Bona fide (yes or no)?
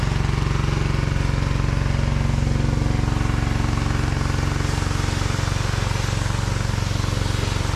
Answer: yes